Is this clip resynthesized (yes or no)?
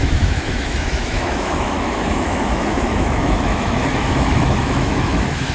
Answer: yes